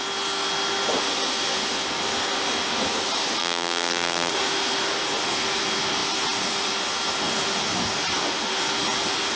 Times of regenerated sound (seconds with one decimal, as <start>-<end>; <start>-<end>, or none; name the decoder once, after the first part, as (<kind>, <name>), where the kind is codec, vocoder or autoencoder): 3.4-4.3 (vocoder, BigVGAN v2)